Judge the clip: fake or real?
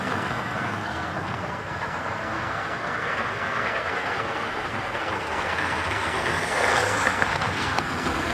fake